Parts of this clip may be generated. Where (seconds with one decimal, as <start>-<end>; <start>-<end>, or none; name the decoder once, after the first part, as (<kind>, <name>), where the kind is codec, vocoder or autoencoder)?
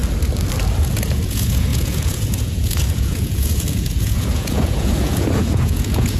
0.8-6.2 (vocoder, Vocos)